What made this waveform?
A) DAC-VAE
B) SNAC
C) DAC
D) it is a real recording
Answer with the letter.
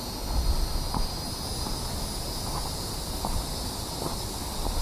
D